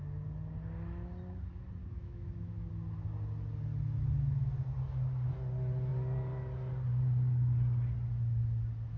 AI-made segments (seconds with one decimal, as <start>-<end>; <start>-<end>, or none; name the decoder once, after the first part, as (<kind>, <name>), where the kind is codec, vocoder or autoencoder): 1.8-2.7 (autoencoder, DAC-VAE)